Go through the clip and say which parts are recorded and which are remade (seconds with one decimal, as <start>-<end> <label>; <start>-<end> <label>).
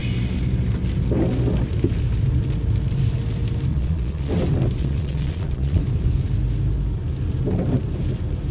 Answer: 0.0-3.7 recorded; 3.7-4.3 remade; 4.3-4.8 recorded; 4.8-5.8 remade; 5.8-8.5 recorded